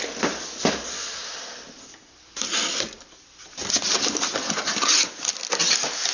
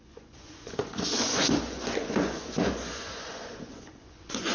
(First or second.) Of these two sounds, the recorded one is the first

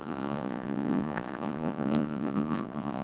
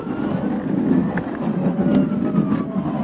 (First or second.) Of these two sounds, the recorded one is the second